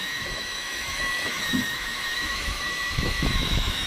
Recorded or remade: remade